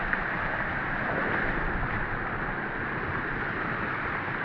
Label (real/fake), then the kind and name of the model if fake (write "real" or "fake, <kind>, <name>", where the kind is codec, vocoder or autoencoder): real